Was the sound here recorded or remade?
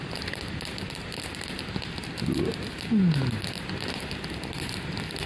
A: recorded